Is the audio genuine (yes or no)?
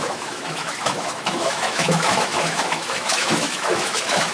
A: no